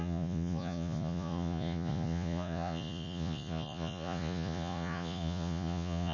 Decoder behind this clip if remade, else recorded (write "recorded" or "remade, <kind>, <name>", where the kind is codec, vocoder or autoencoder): remade, vocoder, Vocos